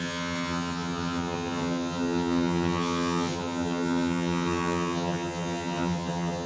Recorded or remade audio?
remade